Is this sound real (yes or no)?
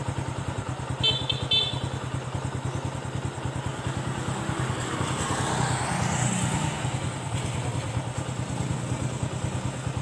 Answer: yes